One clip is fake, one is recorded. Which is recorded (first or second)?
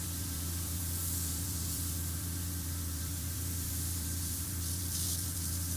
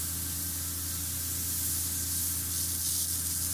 second